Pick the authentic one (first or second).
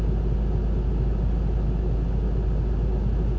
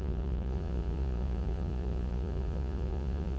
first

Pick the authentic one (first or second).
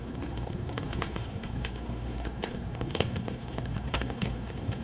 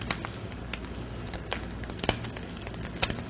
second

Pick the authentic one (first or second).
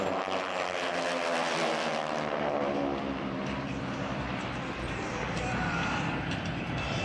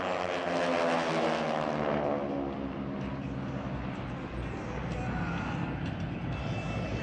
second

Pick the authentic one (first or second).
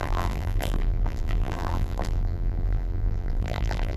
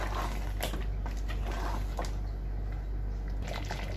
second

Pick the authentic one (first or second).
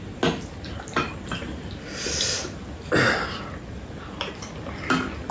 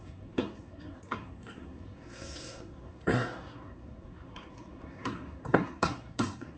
first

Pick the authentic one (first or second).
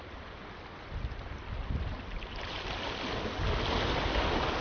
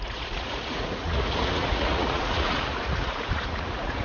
first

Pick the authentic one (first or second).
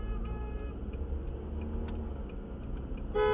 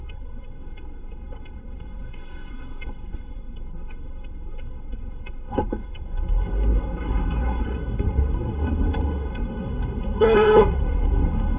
first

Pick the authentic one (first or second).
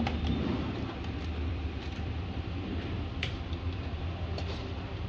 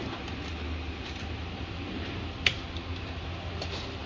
second